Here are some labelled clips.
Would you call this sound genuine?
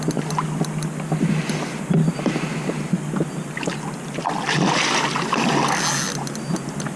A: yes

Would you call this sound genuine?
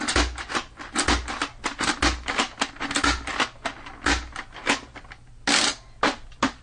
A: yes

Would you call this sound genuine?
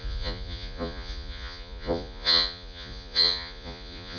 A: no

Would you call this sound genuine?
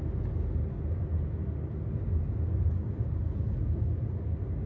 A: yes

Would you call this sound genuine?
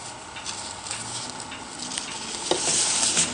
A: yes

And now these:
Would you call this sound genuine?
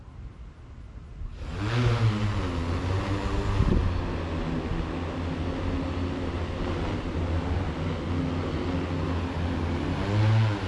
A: yes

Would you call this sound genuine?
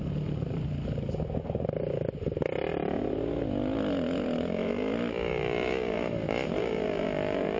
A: yes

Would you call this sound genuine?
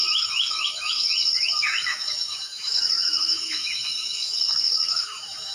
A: no